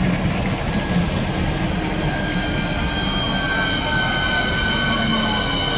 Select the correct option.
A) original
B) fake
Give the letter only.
A